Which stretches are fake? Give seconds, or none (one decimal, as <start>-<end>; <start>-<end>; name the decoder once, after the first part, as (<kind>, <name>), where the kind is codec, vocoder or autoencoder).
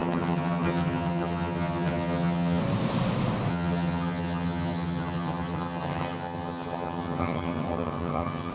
0.0-2.6 (vocoder, HiFi-GAN); 3.5-8.5